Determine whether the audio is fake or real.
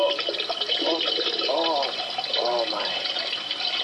real